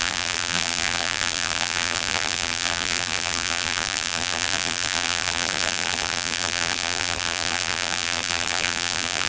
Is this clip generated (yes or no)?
yes